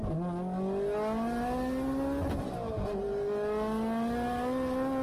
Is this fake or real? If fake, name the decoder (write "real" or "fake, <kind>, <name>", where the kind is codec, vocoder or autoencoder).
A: real